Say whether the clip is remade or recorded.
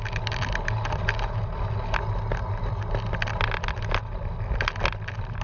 recorded